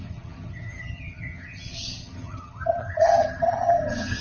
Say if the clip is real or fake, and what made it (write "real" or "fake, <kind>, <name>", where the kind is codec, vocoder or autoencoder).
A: fake, vocoder, HiFi-GAN